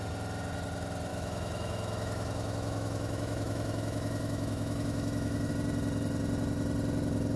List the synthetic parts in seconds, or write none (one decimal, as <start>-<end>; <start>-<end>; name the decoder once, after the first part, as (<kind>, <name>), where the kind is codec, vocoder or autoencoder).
1.1-5.5 (autoencoder, DAC-VAE)